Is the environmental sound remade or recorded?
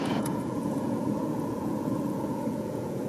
remade